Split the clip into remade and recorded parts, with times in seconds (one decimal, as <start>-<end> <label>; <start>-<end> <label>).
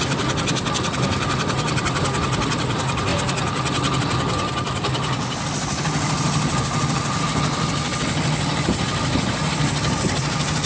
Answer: 0.0-10.7 recorded